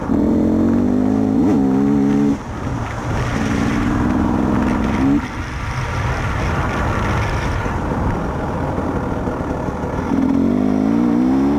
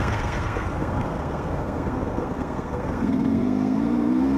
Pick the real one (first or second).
first